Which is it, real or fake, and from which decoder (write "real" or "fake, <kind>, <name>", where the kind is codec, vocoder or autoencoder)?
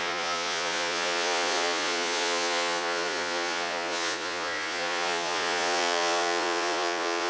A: fake, vocoder, Vocos